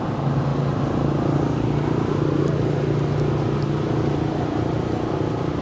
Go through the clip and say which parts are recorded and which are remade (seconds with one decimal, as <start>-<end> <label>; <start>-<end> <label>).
0.0-5.6 recorded